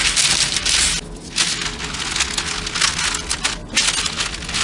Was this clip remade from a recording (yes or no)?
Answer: no